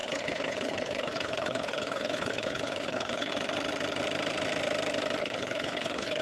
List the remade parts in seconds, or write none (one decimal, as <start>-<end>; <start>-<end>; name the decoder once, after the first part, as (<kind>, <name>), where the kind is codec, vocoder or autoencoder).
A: 0.0-3.3 (codec, HILCodec); 5.2-6.2